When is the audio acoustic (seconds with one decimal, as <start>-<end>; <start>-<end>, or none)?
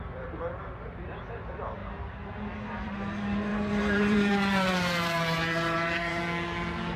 0.0-1.8; 2.3-3.5; 6.2-7.0